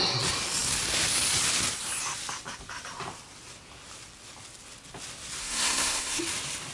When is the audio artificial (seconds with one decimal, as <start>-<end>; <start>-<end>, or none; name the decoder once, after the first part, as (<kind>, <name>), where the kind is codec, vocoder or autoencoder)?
5.4-6.2 (codec, SNAC)